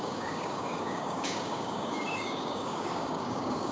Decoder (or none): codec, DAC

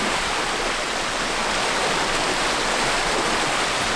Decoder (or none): vocoder, BigVGAN v2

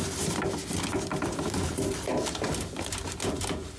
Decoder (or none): none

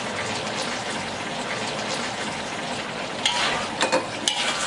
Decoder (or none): none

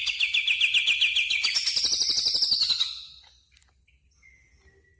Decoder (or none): none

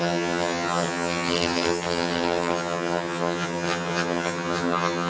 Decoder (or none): vocoder, HiFi-GAN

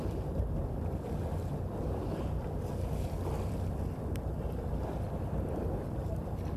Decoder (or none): vocoder, BigVGAN v2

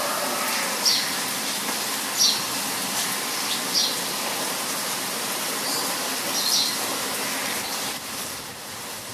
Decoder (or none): none